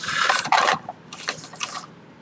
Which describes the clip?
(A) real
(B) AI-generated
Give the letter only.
A